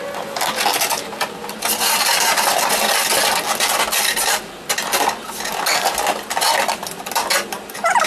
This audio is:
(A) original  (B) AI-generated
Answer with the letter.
A